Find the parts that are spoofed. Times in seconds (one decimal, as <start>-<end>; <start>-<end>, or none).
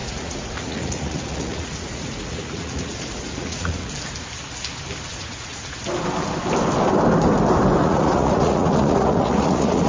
0.0-3.9; 5.1-5.8; 7.8-9.9